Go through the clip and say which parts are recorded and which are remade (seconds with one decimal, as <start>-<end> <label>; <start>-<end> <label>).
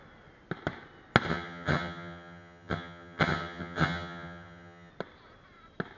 0.0-1.3 recorded; 1.3-4.9 remade; 4.9-6.0 recorded